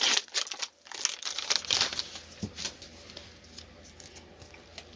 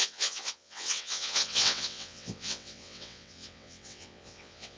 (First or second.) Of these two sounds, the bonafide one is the first